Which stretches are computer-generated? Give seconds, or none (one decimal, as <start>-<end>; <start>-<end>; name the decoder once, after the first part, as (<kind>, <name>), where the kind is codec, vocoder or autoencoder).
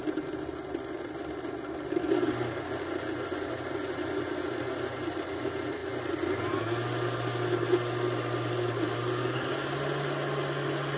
none